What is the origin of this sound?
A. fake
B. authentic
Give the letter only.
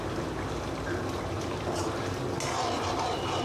B